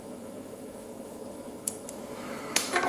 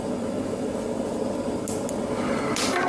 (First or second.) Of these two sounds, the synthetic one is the first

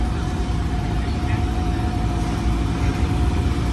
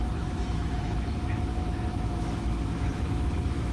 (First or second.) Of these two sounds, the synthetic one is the second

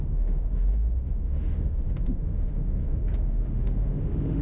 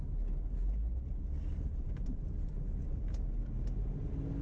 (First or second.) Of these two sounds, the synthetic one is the first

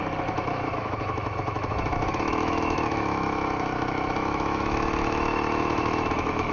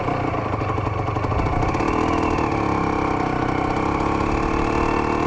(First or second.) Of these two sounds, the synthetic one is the first